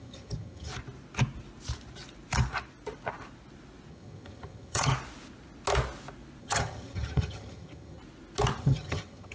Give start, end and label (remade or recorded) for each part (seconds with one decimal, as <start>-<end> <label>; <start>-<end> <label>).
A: 0.0-0.7 remade; 0.7-3.9 recorded; 3.9-4.9 remade; 4.9-6.4 recorded; 6.4-8.0 remade; 8.0-8.6 recorded; 8.6-9.3 remade